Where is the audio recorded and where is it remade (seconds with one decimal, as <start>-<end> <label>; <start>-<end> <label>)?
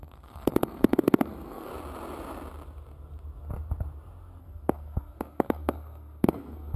0.0-1.7 remade; 1.7-4.4 recorded; 4.4-6.8 remade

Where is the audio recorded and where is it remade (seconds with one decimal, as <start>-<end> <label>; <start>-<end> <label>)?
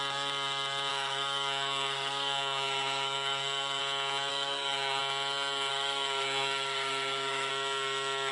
0.0-0.9 recorded; 0.9-3.8 remade; 3.8-4.3 recorded; 4.3-5.0 remade; 5.0-5.7 recorded; 5.7-7.5 remade; 7.5-8.3 recorded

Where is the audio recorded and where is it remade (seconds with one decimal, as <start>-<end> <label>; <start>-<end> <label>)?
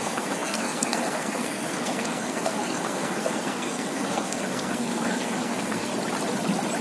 0.0-5.9 remade; 5.9-6.8 recorded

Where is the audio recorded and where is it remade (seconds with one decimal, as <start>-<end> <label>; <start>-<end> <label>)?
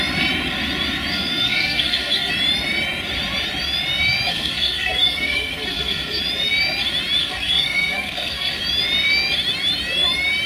0.0-1.1 recorded; 1.1-2.3 remade; 2.3-4.3 recorded; 4.3-6.2 remade; 6.2-7.2 recorded; 7.2-8.6 remade; 8.6-10.5 recorded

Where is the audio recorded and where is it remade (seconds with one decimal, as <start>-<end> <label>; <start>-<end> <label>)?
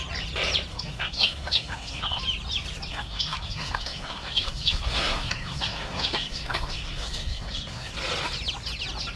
0.0-0.7 recorded; 0.7-2.2 remade; 2.2-2.9 recorded; 2.9-7.9 remade; 7.9-9.2 recorded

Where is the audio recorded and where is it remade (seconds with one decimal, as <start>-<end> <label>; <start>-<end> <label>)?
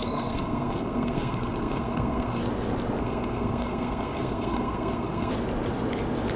0.0-2.4 remade; 2.4-3.0 recorded; 3.0-5.3 remade; 5.3-6.4 recorded